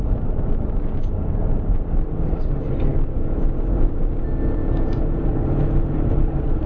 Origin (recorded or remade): remade